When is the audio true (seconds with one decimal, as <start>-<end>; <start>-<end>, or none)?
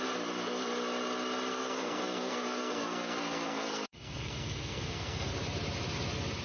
0.0-1.5; 5.3-6.4